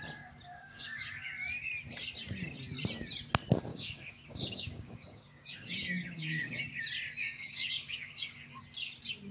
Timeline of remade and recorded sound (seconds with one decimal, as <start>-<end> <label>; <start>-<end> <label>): 0.0-0.6 recorded; 0.6-1.3 remade; 1.3-3.7 recorded; 3.7-6.6 remade; 6.6-7.2 recorded; 7.2-8.6 remade; 8.6-9.3 recorded